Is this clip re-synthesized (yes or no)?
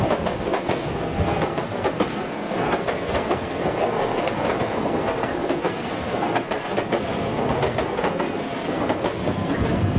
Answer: yes